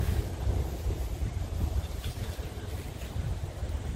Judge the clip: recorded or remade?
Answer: recorded